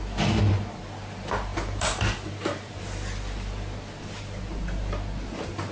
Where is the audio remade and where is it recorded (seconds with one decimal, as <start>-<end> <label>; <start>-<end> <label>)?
0.0-5.7 recorded